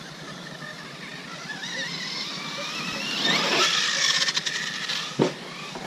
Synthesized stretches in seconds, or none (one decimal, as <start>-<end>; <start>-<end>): none